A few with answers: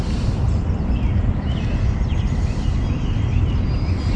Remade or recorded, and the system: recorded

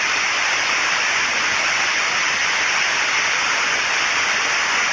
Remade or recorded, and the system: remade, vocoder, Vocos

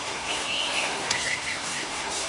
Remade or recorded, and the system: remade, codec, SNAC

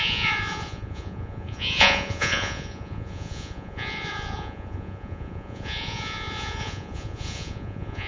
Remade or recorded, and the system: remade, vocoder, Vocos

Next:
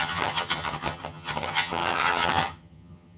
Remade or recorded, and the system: remade, vocoder, HiFi-GAN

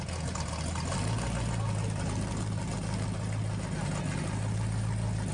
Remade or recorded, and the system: recorded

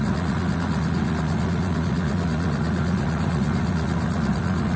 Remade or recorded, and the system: remade, vocoder, Vocos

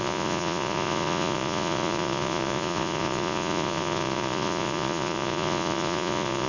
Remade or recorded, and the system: remade, vocoder, Vocos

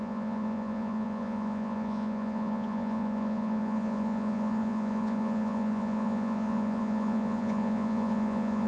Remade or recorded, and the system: remade, vocoder, Vocos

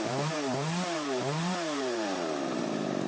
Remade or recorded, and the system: remade, vocoder, BigVGAN v2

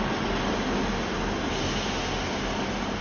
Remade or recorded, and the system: recorded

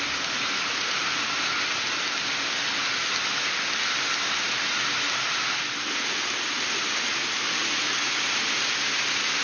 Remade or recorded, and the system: recorded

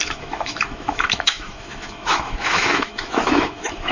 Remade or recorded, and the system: remade, autoencoder, DAC-VAE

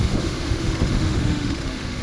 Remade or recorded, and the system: remade, autoencoder, DAC-VAE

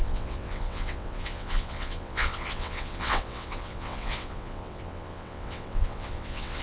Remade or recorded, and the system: remade, vocoder, WaveNeXt